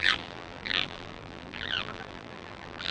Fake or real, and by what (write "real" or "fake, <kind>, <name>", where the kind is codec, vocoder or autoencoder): fake, vocoder, BigVGAN v2